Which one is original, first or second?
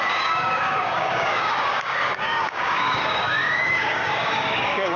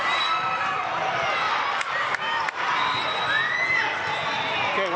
second